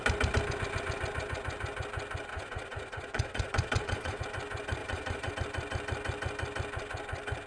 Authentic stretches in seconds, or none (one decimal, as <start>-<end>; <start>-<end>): 0.0-2.3; 4.2-4.8; 5.3-7.5